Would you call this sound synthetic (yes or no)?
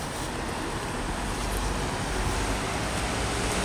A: no